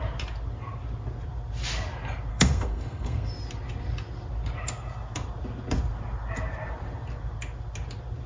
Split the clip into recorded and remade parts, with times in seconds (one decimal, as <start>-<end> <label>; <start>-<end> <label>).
0.0-2.3 recorded; 2.3-3.3 remade; 3.3-8.3 recorded